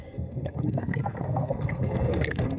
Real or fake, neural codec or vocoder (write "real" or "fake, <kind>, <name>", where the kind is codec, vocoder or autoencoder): fake, codec, SNAC